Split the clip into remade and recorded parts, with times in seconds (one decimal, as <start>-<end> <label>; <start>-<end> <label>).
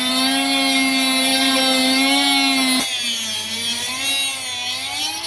0.0-5.3 recorded